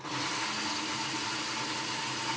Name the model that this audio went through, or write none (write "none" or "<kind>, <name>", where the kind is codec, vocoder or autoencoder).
none